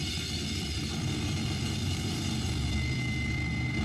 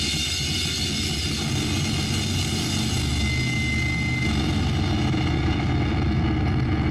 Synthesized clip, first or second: first